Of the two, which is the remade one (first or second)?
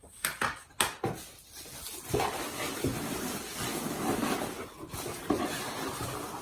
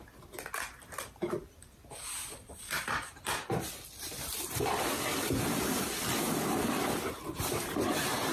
second